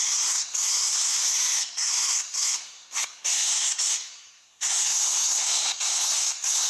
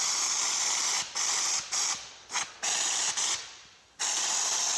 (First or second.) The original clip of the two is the second